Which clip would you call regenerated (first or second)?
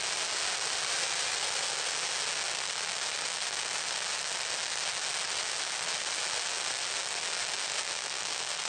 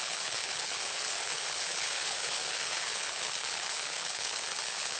second